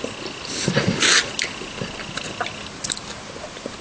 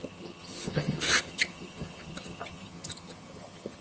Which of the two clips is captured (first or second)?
first